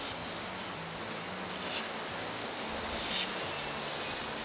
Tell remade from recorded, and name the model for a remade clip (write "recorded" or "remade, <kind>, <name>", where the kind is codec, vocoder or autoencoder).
recorded